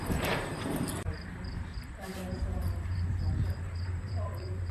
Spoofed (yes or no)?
yes